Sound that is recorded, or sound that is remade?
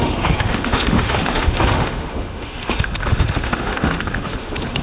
remade